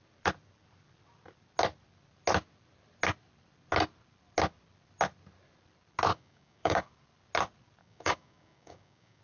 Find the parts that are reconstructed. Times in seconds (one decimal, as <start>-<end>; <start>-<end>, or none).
6.1-6.9; 7.8-9.2